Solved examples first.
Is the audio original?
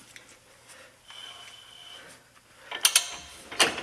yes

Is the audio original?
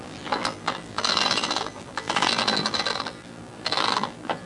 no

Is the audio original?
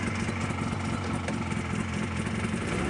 yes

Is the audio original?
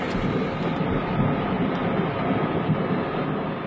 yes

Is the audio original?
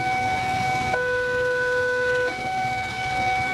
no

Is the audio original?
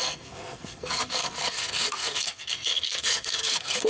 no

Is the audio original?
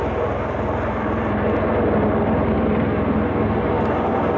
yes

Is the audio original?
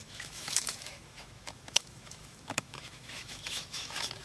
no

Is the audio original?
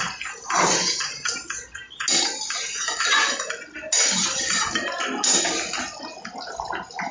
yes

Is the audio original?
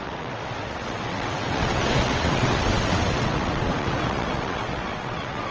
no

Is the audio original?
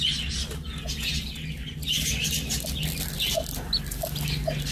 yes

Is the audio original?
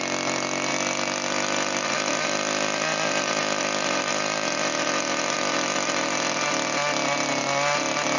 yes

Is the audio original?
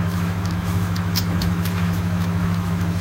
no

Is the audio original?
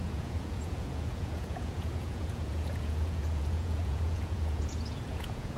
no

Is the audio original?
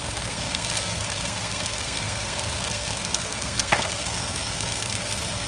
no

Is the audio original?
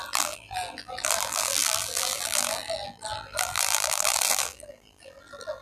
no